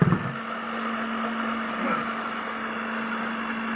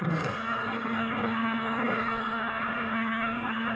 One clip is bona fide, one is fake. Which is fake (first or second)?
second